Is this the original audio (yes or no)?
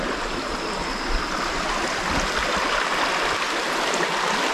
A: yes